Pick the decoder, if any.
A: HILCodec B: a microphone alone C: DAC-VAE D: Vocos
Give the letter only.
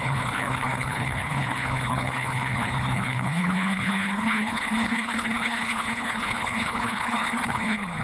A